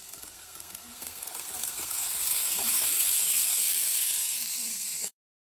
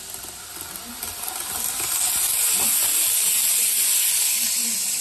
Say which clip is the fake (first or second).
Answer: first